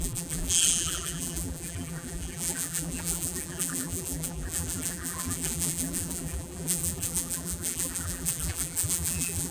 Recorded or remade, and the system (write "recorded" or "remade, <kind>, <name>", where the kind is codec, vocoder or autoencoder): remade, vocoder, BigVGAN v2